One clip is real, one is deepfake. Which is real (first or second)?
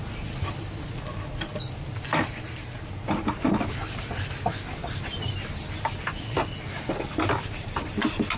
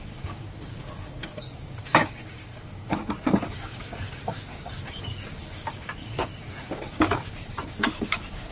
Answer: first